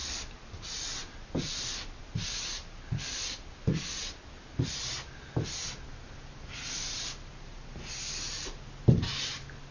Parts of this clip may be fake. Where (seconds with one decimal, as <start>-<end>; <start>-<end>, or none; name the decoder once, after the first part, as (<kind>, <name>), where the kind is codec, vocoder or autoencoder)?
none